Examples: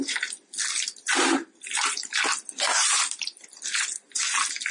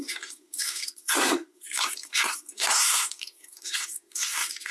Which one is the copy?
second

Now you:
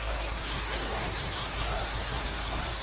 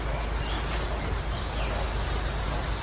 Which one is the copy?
first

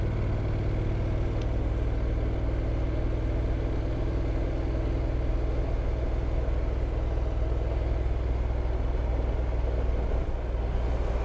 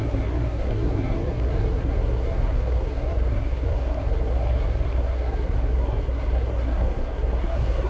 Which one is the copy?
second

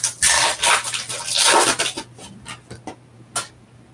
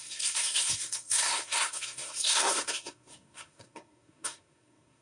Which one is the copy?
second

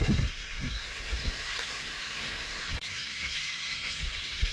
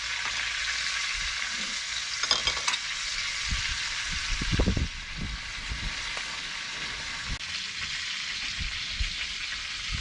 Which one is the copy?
first